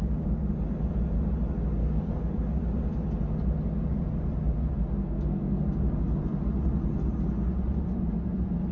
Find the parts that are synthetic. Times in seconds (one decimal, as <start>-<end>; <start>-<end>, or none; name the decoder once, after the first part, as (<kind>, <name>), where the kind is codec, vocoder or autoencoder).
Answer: 1.8-2.6 (codec, SNAC); 5.0-5.6